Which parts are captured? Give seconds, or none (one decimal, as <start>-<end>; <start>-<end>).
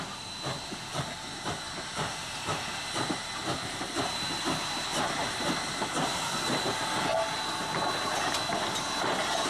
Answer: 0.0-0.9; 4.0-4.9; 5.5-6.1; 6.6-9.5